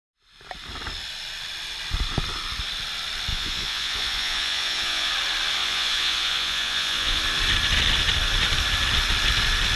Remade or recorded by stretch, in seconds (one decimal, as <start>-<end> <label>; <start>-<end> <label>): 0.0-3.3 recorded; 3.3-5.1 remade; 5.1-5.6 recorded; 5.6-7.2 remade; 7.2-9.8 recorded